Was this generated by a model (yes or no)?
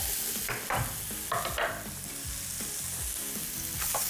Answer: no